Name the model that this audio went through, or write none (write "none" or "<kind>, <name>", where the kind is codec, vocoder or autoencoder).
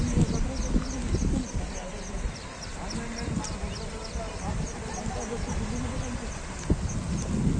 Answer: none